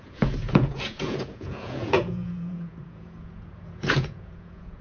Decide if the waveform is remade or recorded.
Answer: remade